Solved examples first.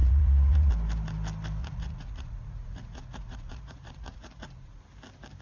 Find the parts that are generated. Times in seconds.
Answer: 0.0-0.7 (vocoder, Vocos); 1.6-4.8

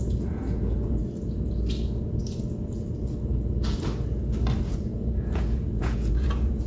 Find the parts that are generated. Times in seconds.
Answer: 0.0-1.0 (vocoder, Vocos); 4.7-6.7

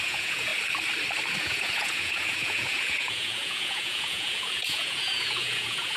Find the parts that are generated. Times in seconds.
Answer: 0.0-0.5 (vocoder, Vocos); 1.4-6.0

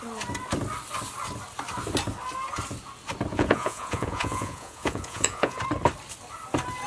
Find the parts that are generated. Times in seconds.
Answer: 3.3-5.6 (vocoder, Vocos)

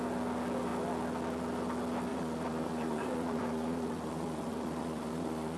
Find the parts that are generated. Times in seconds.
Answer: 2.1-5.6 (vocoder, Vocos)